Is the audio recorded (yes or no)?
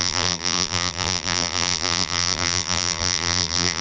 no